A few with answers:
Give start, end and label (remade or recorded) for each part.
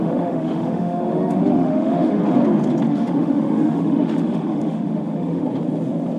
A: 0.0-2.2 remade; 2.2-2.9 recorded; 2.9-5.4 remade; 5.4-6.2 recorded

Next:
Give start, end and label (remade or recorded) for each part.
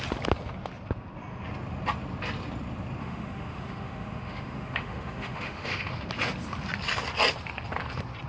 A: 0.0-3.0 recorded; 3.0-5.9 remade; 5.9-8.3 recorded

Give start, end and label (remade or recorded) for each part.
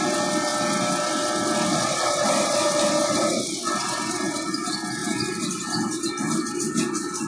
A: 0.0-7.3 recorded